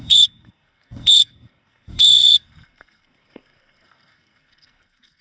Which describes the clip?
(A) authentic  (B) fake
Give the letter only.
B